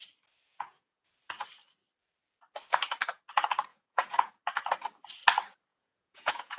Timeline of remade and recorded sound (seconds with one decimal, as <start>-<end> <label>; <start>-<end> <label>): 0.0-0.5 recorded; 0.5-1.1 remade; 1.1-3.7 recorded; 3.7-4.3 remade; 4.3-5.7 recorded; 5.7-6.6 remade